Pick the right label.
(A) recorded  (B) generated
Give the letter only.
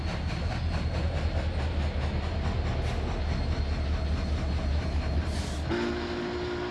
A